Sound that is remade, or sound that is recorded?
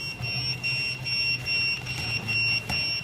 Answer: recorded